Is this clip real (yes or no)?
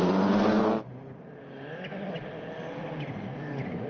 yes